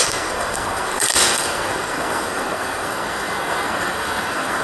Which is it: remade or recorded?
remade